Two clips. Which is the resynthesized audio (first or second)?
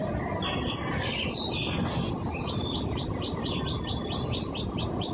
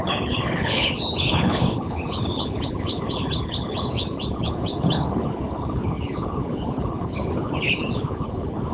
second